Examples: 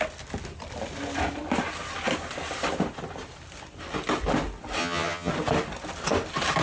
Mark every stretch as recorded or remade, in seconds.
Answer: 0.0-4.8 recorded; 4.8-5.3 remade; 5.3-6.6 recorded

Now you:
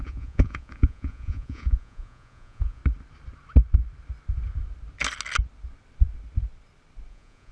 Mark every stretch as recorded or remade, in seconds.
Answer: 0.0-2.8 remade; 2.8-7.1 recorded; 7.1-7.5 remade

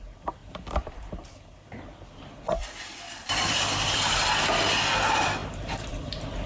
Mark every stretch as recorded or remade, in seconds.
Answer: 0.0-0.4 recorded; 0.4-4.0 remade; 4.0-5.4 recorded; 5.4-6.5 remade

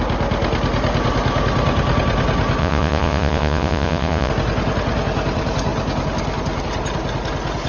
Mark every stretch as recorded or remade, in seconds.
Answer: 0.0-2.6 recorded; 2.6-4.3 remade; 4.3-7.7 recorded

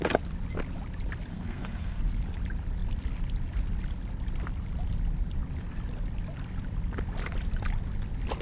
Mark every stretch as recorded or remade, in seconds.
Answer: 0.0-1.3 recorded; 1.3-2.0 remade; 2.0-8.4 recorded